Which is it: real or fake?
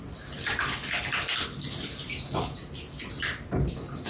real